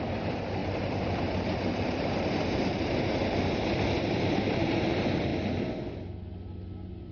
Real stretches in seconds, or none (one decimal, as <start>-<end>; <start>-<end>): 3.2-4.0; 5.3-7.1